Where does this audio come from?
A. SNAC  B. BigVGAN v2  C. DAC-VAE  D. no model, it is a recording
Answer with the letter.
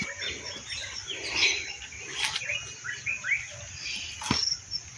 D